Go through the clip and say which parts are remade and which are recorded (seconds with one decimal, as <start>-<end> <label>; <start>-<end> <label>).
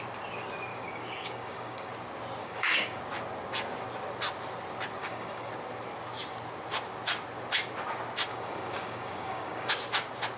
0.0-0.7 recorded; 0.7-1.9 remade; 1.9-2.4 recorded; 2.4-3.0 remade; 3.0-5.0 recorded; 5.0-5.5 remade; 5.5-8.3 recorded; 8.3-9.7 remade; 9.7-10.4 recorded